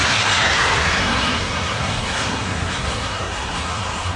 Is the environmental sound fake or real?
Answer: fake